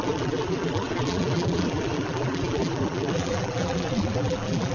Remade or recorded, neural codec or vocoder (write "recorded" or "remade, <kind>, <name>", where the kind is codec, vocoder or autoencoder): remade, vocoder, BigVGAN v2